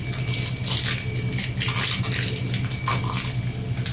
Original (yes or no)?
yes